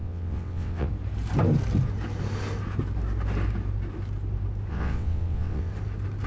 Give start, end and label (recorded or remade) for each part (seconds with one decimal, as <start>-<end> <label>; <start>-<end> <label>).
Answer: 0.0-0.9 remade; 0.9-4.7 recorded; 4.7-5.7 remade; 5.7-6.3 recorded